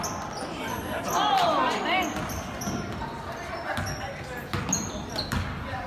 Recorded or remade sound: recorded